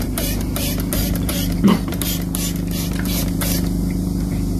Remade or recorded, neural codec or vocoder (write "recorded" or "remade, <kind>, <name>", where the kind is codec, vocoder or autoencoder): remade, vocoder, BigVGAN v2